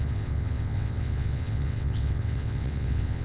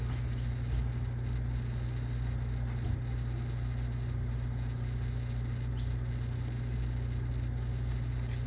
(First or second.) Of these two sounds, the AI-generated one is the first